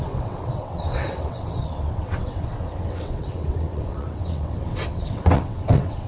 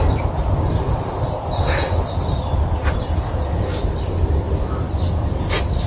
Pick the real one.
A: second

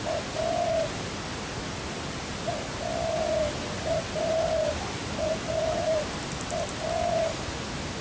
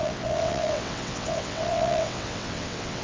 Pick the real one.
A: first